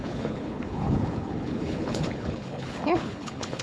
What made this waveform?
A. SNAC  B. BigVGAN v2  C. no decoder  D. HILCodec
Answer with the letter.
D